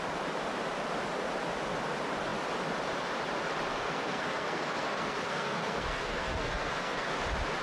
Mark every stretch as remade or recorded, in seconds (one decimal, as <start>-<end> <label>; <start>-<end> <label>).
0.0-3.7 recorded; 3.7-7.1 remade; 7.1-7.6 recorded